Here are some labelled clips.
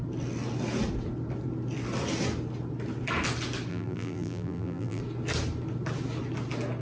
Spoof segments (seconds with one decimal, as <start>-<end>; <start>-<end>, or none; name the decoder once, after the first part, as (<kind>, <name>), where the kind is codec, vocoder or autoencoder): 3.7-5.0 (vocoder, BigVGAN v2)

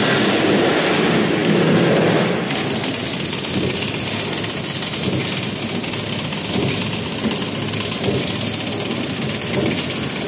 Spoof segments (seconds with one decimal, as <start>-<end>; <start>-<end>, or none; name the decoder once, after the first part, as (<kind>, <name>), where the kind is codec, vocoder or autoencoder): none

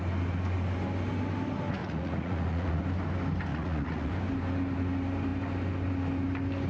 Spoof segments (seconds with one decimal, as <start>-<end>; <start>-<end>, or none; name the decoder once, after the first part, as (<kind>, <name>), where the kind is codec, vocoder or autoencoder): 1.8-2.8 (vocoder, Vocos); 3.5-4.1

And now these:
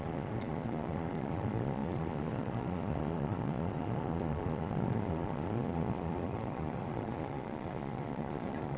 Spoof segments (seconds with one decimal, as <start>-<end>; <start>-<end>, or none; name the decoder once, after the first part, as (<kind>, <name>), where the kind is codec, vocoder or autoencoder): 0.0-8.8 (vocoder, Vocos)

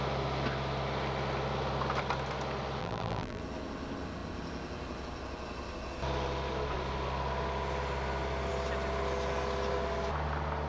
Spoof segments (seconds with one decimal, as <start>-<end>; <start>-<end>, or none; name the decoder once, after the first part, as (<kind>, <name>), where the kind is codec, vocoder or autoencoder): 2.8-3.4 (vocoder, BigVGAN v2)

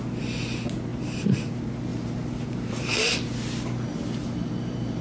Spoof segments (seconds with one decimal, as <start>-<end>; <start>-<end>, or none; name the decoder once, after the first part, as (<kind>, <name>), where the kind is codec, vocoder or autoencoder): 0.9-1.5 (vocoder, BigVGAN v2); 1.9-3.1; 4.2-5.0

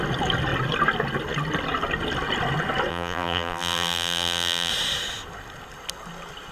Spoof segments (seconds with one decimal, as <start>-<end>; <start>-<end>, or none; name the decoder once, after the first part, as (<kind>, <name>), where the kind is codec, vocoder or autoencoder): 2.9-4.7 (vocoder, BigVGAN v2)